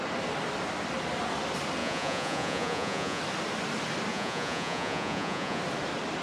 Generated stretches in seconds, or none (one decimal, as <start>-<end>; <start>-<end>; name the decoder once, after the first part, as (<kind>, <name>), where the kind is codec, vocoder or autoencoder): 1.8-3.2 (vocoder, Vocos); 4.1-5.6